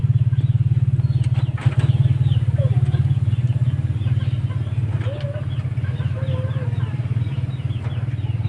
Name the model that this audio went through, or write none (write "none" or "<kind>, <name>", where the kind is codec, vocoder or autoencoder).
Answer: none